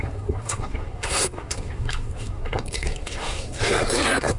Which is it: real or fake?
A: fake